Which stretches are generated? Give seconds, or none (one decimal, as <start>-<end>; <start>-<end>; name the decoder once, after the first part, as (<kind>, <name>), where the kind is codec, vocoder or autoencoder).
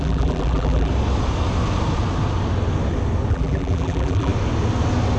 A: 0.0-0.9 (vocoder, BigVGAN v2); 3.3-4.3